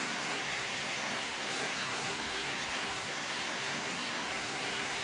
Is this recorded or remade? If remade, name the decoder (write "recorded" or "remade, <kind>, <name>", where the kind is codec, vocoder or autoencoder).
remade, codec, SNAC